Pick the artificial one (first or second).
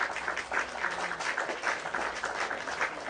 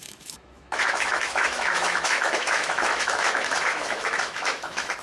second